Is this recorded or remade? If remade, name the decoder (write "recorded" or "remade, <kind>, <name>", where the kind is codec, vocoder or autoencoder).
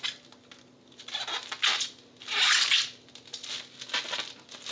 recorded